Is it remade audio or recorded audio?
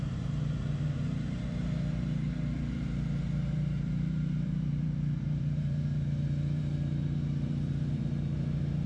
remade